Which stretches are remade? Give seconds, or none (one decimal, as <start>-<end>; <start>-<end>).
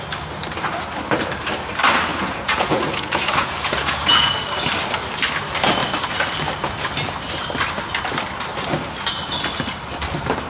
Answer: 2.1-4.4